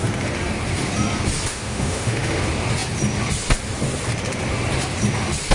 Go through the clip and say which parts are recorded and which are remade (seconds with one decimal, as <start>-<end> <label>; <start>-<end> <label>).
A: 0.0-1.5 recorded; 1.5-2.4 remade; 2.4-5.5 recorded